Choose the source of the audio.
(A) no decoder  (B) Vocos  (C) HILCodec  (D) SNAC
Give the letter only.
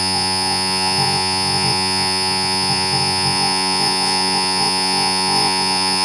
B